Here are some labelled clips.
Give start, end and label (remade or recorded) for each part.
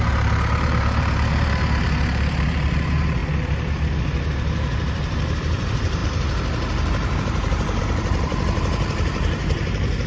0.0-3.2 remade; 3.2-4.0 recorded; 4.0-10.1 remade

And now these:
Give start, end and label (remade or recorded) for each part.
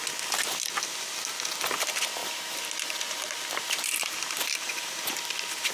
0.0-2.2 recorded; 2.2-5.7 remade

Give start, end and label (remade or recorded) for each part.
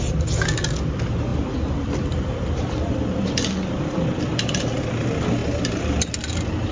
0.0-1.3 recorded; 1.3-4.2 remade; 4.2-6.7 recorded